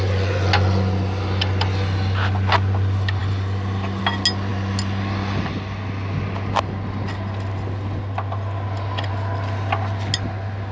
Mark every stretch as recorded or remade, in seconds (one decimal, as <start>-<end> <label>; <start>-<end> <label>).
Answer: 0.0-10.7 recorded